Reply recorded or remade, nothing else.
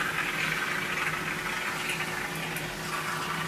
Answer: recorded